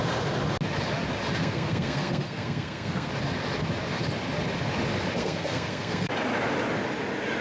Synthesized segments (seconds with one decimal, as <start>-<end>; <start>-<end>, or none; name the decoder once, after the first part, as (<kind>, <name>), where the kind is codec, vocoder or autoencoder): 1.4-3.1 (codec, SNAC); 5.2-6.1